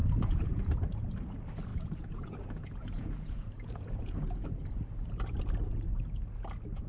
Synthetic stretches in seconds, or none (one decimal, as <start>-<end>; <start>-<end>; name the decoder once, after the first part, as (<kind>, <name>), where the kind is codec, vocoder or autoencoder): 0.0-0.7 (vocoder, Vocos); 1.7-4.5